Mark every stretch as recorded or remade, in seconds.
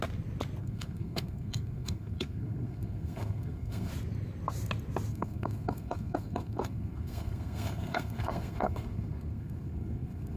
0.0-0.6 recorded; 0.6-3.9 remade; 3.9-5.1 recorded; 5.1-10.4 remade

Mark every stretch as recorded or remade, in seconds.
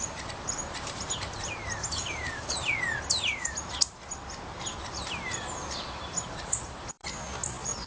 0.0-2.6 remade; 2.6-4.8 recorded; 4.8-7.0 remade; 7.0-7.9 recorded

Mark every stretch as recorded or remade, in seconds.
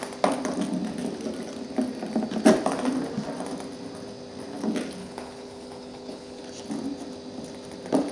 0.0-5.0 recorded; 5.0-6.4 remade; 6.4-8.1 recorded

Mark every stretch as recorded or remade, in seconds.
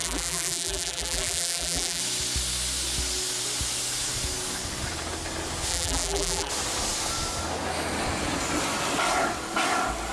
0.0-2.0 remade; 2.0-5.7 recorded; 5.7-6.5 remade; 6.5-10.1 recorded